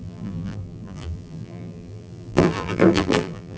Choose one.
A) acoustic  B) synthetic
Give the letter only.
B